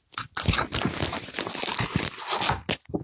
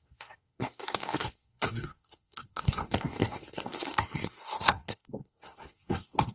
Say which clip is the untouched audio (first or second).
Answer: first